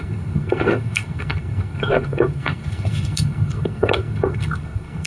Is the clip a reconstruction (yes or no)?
yes